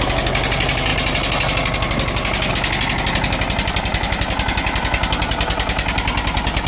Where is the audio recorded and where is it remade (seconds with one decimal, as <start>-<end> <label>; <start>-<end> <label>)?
0.0-6.7 recorded